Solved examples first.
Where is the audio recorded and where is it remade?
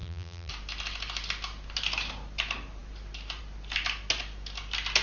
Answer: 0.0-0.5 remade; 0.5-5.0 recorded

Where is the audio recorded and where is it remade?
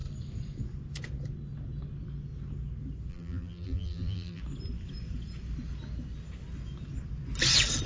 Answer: 0.0-3.1 recorded; 3.1-4.4 remade; 4.4-7.9 recorded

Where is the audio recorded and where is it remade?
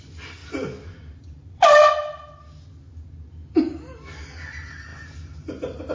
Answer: 0.0-0.4 recorded; 0.4-1.9 remade; 1.9-5.9 recorded